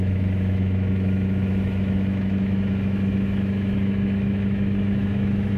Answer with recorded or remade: remade